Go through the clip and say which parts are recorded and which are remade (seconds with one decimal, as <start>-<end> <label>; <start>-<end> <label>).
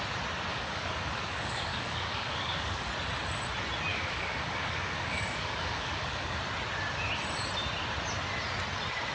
0.0-0.5 recorded; 0.5-2.9 remade; 2.9-3.9 recorded; 3.9-6.4 remade; 6.4-9.1 recorded